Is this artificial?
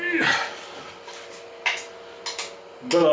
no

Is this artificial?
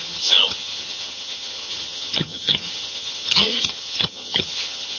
yes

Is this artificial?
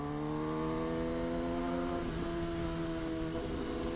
no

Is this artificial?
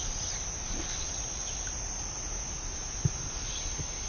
no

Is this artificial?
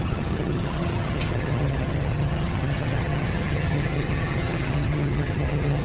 yes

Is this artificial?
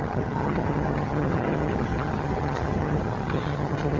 yes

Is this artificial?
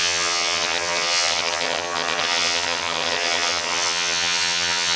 yes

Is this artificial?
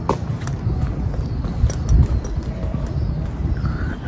no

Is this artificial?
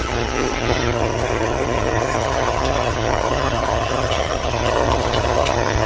yes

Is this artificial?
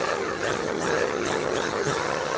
yes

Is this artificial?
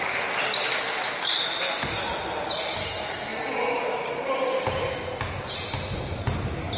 no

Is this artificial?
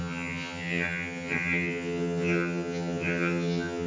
yes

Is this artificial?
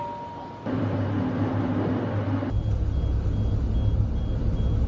no